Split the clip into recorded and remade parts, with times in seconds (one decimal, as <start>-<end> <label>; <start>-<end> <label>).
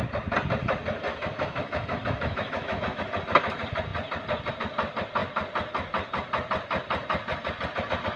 0.0-1.1 recorded; 1.1-3.0 remade; 3.0-8.2 recorded